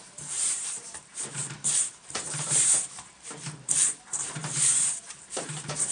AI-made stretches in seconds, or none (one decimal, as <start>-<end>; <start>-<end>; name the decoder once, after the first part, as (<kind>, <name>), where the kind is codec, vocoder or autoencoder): 0.0-4.4 (vocoder, BigVGAN v2); 5.0-5.9